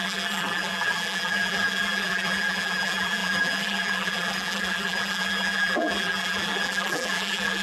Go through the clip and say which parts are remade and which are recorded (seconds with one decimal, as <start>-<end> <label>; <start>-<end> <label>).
0.0-7.6 remade